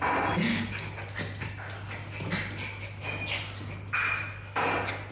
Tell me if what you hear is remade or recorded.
recorded